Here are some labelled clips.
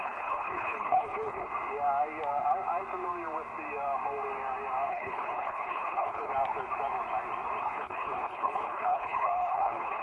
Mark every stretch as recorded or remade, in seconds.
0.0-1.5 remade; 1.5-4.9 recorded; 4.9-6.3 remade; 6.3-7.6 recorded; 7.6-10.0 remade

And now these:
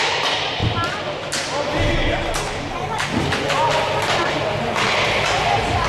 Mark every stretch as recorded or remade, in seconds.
0.0-5.9 recorded